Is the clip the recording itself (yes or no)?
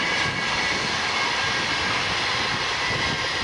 yes